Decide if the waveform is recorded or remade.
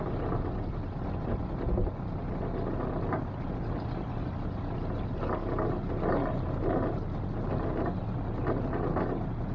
recorded